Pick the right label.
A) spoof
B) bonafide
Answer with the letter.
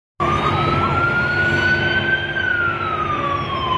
B